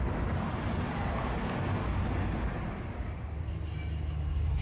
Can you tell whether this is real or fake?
real